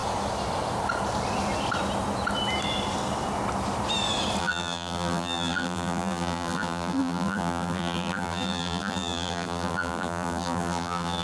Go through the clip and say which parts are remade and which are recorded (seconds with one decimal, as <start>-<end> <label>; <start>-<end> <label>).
0.0-4.4 recorded; 4.4-11.2 remade